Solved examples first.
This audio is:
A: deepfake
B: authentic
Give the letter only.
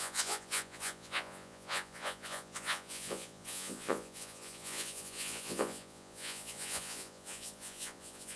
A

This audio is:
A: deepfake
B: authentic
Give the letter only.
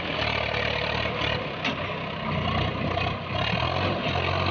B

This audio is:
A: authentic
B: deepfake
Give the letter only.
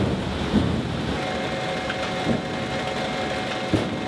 A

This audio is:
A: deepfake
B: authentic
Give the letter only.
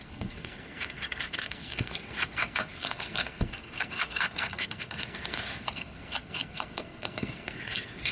A